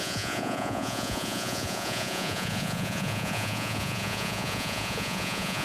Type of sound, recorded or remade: remade